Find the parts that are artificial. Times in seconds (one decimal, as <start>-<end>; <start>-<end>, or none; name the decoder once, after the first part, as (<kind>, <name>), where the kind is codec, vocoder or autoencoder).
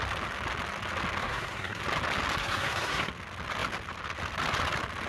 1.2-1.8 (codec, SNAC); 2.4-3.1